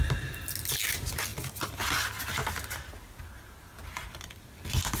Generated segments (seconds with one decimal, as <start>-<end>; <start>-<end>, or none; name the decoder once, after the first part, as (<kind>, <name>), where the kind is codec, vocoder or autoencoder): none